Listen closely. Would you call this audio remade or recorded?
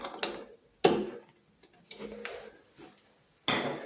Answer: recorded